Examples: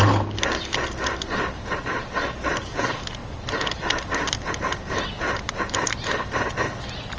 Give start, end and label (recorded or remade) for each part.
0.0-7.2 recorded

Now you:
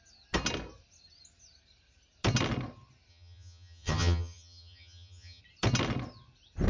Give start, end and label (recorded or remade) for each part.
0.0-3.1 recorded; 3.1-5.4 remade; 5.4-6.7 recorded

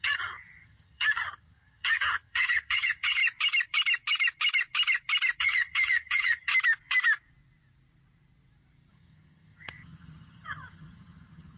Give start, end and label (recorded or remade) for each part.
0.0-3.2 remade; 3.2-5.4 recorded; 5.4-6.5 remade; 6.5-8.9 recorded; 8.9-11.6 remade

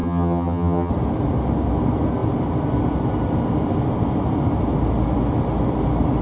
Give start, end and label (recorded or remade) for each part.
0.0-0.9 remade; 0.9-6.2 recorded

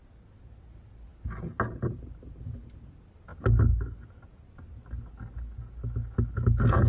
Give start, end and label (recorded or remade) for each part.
0.0-6.9 recorded

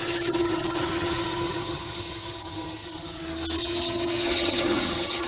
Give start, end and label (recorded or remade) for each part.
0.0-3.2 remade; 3.2-3.6 recorded; 3.6-5.3 remade